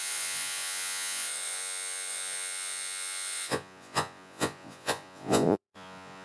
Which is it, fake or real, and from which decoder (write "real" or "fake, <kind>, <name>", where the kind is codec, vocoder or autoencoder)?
fake, vocoder, Vocos